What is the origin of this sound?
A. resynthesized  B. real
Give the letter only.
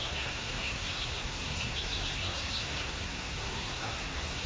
A